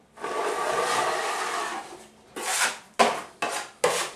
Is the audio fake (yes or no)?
no